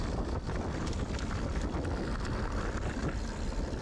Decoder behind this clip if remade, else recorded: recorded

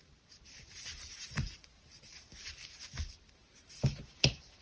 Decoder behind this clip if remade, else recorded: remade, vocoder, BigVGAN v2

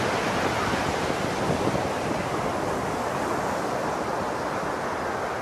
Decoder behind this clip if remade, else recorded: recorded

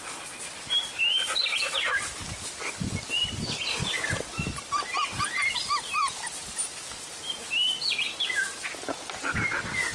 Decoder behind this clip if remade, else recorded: recorded